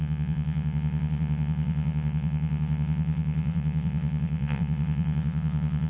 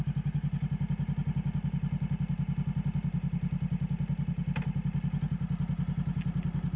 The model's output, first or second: first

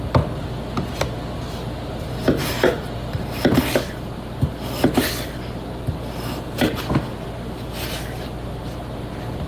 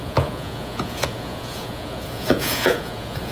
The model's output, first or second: second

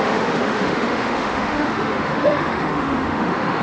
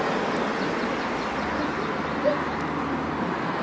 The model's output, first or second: first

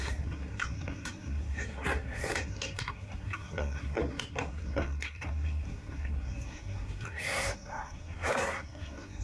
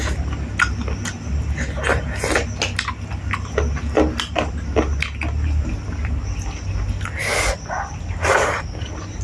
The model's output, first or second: first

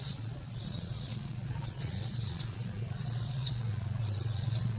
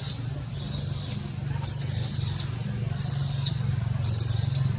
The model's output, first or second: first